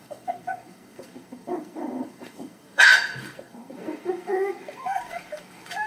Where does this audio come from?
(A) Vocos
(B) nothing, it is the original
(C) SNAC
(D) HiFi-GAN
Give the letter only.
C